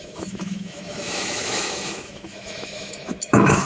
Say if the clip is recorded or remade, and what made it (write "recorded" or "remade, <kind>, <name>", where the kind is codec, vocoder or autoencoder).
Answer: remade, autoencoder, DAC-VAE